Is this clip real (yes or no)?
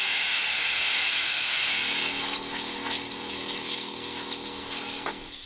no